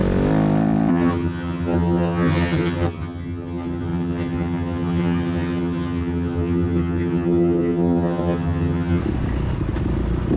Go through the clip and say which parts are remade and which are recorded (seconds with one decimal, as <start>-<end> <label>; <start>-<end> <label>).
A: 0.0-0.9 recorded; 0.9-9.0 remade; 9.0-10.4 recorded